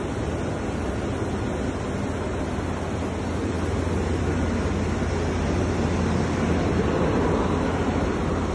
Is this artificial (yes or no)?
no